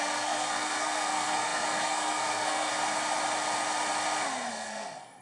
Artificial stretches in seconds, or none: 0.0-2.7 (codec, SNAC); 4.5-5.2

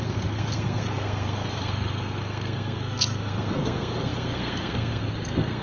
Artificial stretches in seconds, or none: 0.0-5.6 (codec, SNAC)

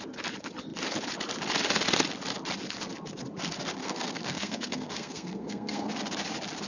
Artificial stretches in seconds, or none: 3.8-5.9 (codec, SNAC)

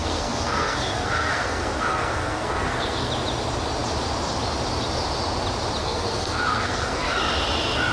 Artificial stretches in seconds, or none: 0.0-3.1 (codec, SNAC); 5.8-7.2

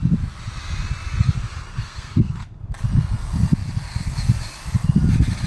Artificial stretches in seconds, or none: 1.7-2.7 (codec, SNAC)

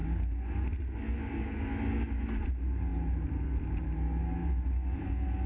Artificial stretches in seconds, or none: none

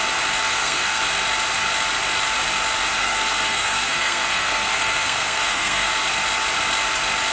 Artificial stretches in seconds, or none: 0.4-1.0 (codec, SNAC); 3.0-5.9

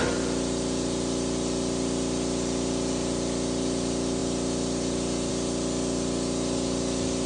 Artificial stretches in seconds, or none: none